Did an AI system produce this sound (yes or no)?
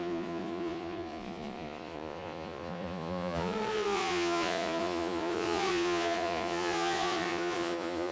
yes